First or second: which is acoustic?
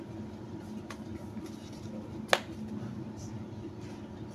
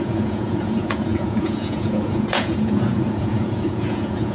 first